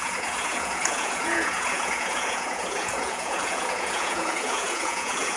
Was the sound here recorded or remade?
remade